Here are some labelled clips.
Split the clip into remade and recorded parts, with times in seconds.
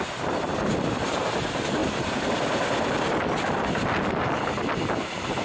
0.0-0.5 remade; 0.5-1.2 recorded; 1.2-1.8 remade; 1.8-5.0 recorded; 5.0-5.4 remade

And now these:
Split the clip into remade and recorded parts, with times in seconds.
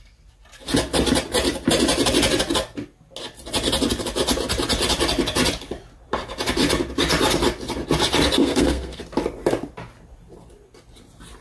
0.0-8.4 recorded; 8.4-9.0 remade; 9.0-11.4 recorded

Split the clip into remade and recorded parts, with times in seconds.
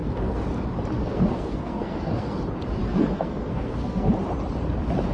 0.0-0.5 remade; 0.5-1.0 recorded; 1.0-2.4 remade; 2.4-2.8 recorded; 2.8-4.1 remade; 4.1-5.1 recorded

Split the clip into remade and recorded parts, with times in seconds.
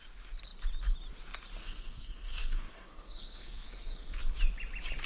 0.0-1.6 recorded; 1.6-4.2 remade; 4.2-5.1 recorded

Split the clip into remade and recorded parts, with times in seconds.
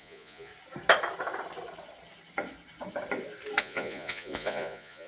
0.0-0.5 remade; 0.5-3.6 recorded; 3.6-5.1 remade